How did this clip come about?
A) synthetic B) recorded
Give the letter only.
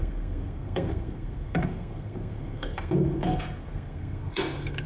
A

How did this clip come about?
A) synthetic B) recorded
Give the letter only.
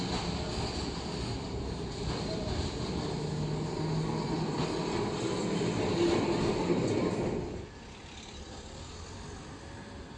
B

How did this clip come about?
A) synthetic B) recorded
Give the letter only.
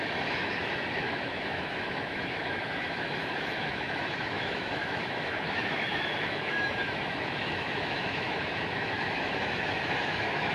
A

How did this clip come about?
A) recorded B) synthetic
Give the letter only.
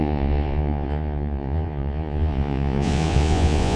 B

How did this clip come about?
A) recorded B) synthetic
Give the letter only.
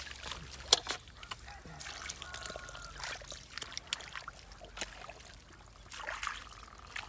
A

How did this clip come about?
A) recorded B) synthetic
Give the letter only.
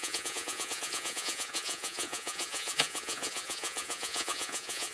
B